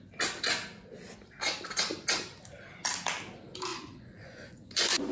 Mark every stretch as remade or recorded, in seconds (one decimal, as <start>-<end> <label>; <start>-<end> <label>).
0.0-3.7 recorded; 3.7-5.1 remade